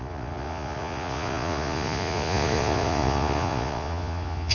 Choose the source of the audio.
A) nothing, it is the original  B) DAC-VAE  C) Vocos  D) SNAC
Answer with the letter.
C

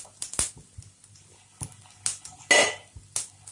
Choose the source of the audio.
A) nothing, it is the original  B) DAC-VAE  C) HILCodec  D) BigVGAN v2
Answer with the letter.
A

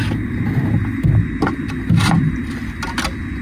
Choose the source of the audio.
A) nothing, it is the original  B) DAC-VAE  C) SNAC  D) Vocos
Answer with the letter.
A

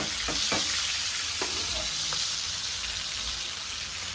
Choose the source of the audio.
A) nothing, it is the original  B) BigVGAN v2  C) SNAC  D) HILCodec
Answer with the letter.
B